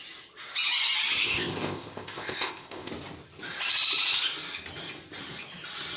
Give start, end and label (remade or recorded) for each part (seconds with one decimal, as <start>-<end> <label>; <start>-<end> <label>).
0.0-1.2 recorded; 1.2-2.9 remade; 2.9-6.0 recorded